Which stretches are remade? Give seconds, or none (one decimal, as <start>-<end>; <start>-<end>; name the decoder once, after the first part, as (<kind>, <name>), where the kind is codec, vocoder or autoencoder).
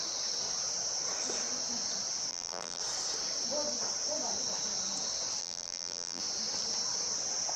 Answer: 2.3-2.8 (vocoder, BigVGAN v2); 5.4-6.2